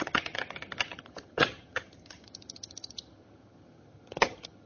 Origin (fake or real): fake